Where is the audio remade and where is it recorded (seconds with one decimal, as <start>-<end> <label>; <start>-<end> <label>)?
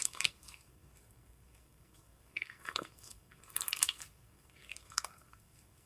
0.0-5.9 remade